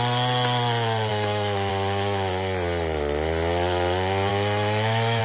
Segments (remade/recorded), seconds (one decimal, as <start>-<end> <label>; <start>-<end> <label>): 0.0-1.1 recorded; 1.1-1.7 remade; 1.7-4.3 recorded; 4.3-5.2 remade